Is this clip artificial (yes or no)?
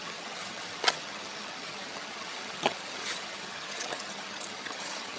yes